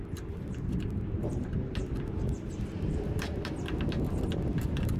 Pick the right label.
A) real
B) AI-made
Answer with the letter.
A